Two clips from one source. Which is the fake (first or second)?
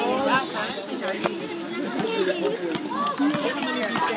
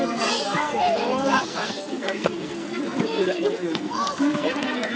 second